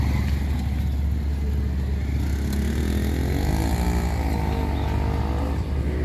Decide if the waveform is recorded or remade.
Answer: recorded